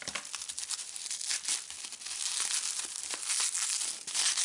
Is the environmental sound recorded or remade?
recorded